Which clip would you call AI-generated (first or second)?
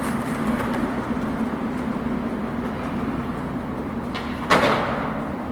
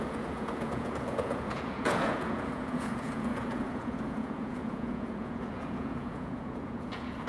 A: second